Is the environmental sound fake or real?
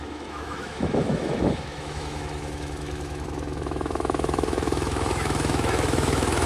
fake